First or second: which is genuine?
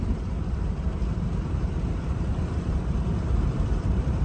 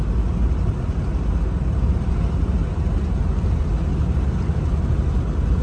second